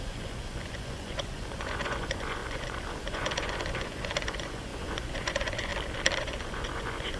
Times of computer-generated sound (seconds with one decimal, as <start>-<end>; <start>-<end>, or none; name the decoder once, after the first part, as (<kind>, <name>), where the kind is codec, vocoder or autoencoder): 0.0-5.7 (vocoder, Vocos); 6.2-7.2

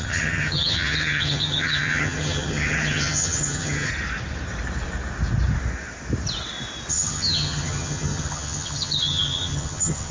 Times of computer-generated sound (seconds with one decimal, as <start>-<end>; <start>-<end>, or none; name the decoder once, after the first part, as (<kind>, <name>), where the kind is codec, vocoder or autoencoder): 0.0-3.9 (vocoder, HiFi-GAN); 6.9-10.1

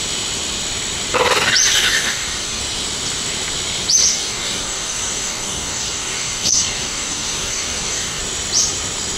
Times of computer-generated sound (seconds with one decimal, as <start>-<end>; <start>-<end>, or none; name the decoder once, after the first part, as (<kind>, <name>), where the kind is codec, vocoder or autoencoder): 1.7-2.6 (codec, DAC); 4.1-8.2

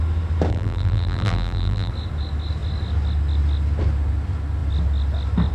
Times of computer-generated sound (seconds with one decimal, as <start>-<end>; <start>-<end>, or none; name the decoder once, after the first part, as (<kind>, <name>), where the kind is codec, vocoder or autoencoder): 0.5-1.9 (vocoder, BigVGAN v2)

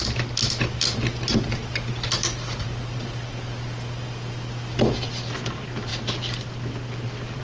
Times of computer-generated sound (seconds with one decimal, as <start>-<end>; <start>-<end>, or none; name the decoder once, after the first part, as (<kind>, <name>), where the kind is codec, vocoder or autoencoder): none

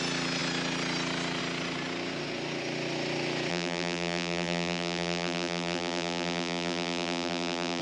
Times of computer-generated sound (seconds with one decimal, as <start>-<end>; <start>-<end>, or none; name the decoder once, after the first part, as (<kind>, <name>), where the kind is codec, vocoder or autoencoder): 3.5-7.8 (vocoder, BigVGAN v2)